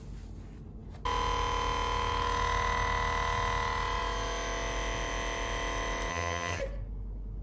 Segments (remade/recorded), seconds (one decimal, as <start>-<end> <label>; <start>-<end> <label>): 0.0-6.1 recorded; 6.1-6.6 remade; 6.6-7.4 recorded